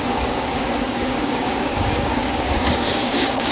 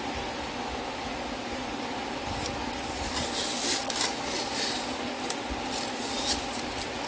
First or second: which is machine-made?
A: first